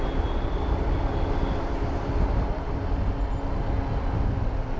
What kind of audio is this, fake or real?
real